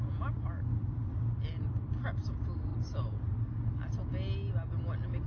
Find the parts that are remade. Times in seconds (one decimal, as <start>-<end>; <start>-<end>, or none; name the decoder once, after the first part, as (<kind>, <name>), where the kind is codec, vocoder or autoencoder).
none